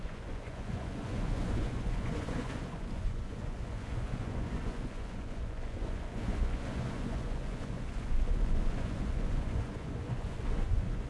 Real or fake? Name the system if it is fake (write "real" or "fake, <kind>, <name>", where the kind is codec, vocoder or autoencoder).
fake, vocoder, Vocos